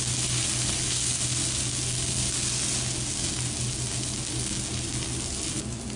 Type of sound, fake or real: real